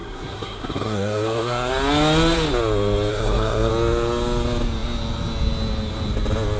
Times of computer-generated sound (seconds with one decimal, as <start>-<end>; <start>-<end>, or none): 0.0-1.7; 3.1-3.7